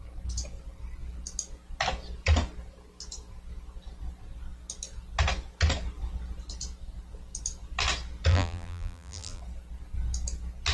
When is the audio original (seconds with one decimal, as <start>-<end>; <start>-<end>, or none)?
0.0-8.3; 9.4-10.7